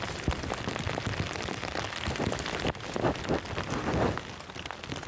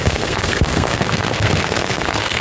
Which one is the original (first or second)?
first